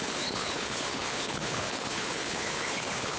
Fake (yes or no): yes